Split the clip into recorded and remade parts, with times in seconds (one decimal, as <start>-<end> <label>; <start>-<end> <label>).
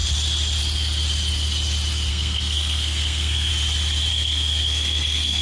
0.0-2.1 recorded; 2.1-3.5 remade; 3.5-4.1 recorded; 4.1-5.4 remade